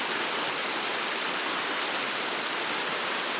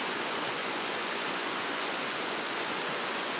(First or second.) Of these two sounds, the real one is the first